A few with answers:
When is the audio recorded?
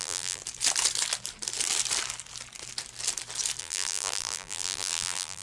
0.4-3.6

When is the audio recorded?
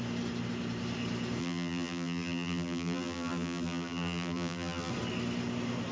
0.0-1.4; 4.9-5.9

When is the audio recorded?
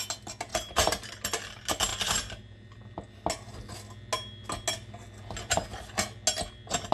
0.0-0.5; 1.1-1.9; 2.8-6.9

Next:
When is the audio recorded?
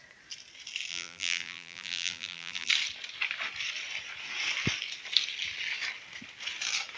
0.0-0.9; 2.7-7.0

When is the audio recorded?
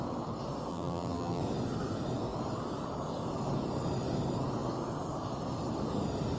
0.0-0.7; 1.4-6.4